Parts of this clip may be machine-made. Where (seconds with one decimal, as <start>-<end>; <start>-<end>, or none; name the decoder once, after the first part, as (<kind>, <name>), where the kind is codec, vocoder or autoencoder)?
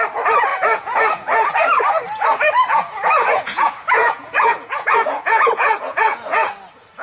0.5-1.5 (vocoder, Vocos); 2.7-6.5